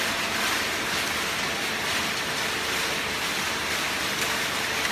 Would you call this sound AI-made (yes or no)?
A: no